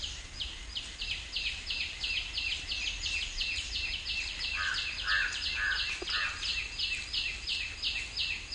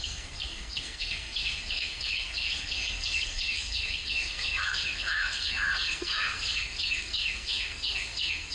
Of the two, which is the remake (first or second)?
second